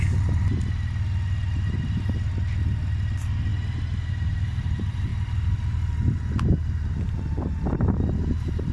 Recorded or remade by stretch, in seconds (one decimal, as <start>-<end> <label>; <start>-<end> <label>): 0.0-8.7 recorded